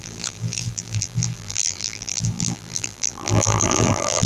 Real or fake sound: fake